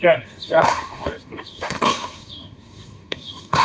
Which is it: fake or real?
fake